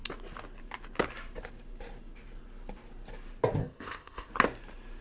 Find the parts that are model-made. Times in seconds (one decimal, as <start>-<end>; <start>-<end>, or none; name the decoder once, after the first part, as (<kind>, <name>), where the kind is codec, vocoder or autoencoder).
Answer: 3.6-4.3 (codec, ZipCodec)